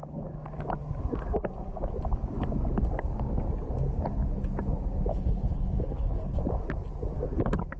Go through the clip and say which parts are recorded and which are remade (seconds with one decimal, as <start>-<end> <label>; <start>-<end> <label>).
0.0-5.1 recorded; 5.1-6.4 remade; 6.4-7.8 recorded

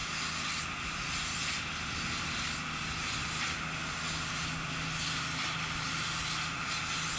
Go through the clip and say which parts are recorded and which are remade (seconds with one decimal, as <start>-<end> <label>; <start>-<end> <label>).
0.0-7.2 recorded

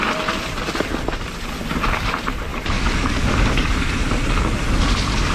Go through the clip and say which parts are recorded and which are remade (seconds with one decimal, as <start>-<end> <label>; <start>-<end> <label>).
0.0-2.5 recorded; 2.5-3.9 remade; 3.9-5.3 recorded

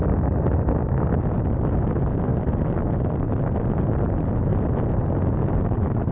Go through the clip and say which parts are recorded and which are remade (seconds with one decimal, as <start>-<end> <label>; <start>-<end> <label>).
0.0-6.1 recorded